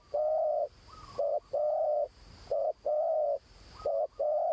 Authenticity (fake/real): real